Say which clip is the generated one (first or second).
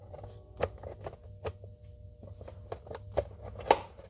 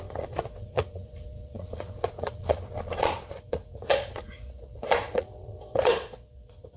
second